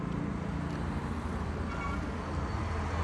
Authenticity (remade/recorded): recorded